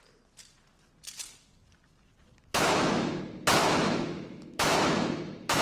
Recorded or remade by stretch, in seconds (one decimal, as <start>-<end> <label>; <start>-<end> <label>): 0.0-2.5 recorded; 2.5-3.2 remade; 3.2-3.6 recorded; 3.6-5.6 remade